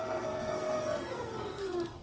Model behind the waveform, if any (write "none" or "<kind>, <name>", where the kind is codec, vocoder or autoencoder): codec, SNAC